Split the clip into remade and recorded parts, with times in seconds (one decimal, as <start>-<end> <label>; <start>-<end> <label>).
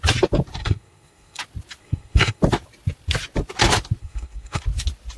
0.0-0.6 recorded; 0.6-1.4 remade; 1.4-1.8 recorded; 1.8-2.4 remade; 2.4-4.0 recorded; 4.0-4.6 remade; 4.6-5.2 recorded